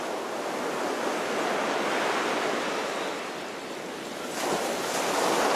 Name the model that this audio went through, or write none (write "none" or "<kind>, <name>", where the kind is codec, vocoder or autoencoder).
none